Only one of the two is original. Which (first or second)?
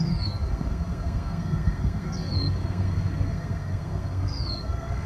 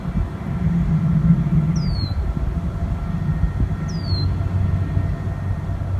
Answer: second